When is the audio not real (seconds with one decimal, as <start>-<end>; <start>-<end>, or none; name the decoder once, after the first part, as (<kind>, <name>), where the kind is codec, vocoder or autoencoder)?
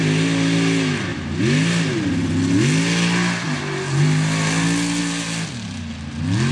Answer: none